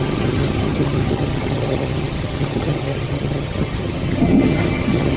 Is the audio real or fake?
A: fake